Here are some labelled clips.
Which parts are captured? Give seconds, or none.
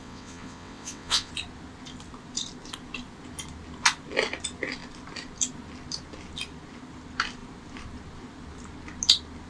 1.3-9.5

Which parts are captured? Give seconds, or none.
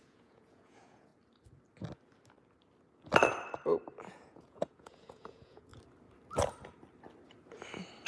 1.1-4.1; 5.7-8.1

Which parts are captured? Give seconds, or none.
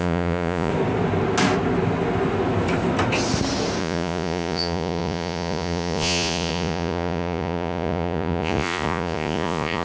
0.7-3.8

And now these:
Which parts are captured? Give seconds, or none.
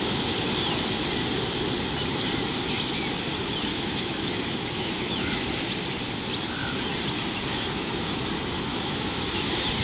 0.0-3.7; 5.3-7.5; 8.2-8.7; 9.2-9.8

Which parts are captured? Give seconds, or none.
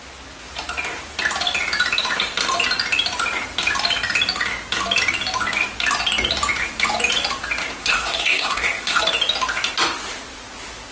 0.0-7.8; 9.0-10.9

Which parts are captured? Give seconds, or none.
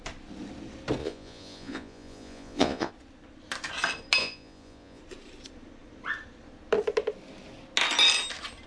0.0-1.0; 2.9-4.2; 5.0-8.7